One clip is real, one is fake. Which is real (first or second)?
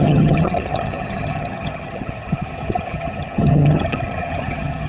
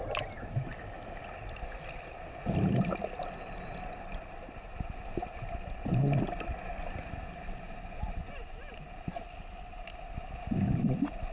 second